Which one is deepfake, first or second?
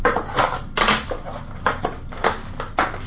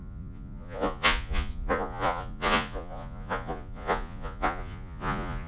second